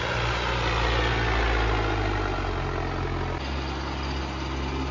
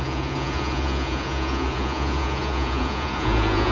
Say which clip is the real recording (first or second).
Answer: first